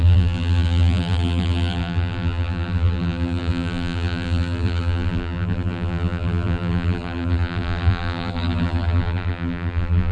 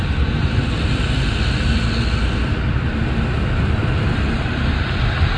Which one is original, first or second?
second